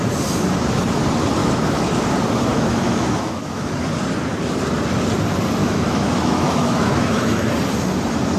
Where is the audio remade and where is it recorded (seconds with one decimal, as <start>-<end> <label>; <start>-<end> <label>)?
0.0-1.4 recorded; 1.4-1.9 remade; 1.9-2.5 recorded; 2.5-3.7 remade; 3.7-5.6 recorded; 5.6-7.5 remade; 7.5-8.4 recorded